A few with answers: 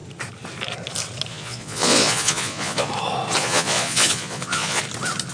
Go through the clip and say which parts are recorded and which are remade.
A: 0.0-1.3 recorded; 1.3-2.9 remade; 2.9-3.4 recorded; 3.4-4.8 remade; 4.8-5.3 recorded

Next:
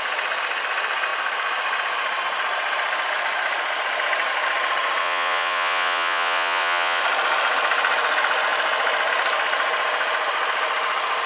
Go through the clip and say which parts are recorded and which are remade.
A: 0.0-5.0 recorded; 5.0-7.0 remade; 7.0-11.3 recorded

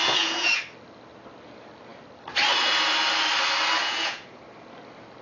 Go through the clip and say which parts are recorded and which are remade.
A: 0.0-0.6 remade; 0.6-3.8 recorded; 3.8-4.4 remade; 4.4-5.2 recorded

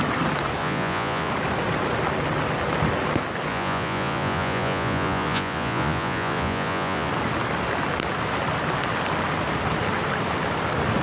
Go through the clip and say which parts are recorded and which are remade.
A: 0.0-0.6 recorded; 0.6-1.3 remade; 1.3-3.5 recorded; 3.5-7.1 remade; 7.1-11.0 recorded

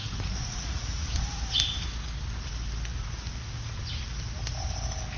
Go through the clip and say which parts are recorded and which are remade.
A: 0.0-0.8 remade; 0.8-5.2 recorded

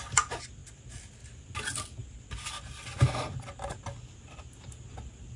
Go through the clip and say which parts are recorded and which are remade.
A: 0.0-5.4 recorded